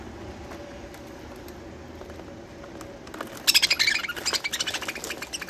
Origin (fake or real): real